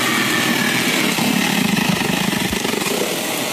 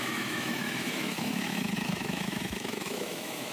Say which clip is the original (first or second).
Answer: first